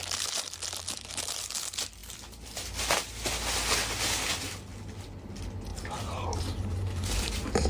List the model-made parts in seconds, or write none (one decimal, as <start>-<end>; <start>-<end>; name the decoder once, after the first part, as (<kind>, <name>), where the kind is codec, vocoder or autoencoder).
5.7-7.7 (vocoder, BigVGAN v2)